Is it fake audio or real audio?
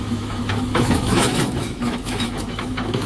fake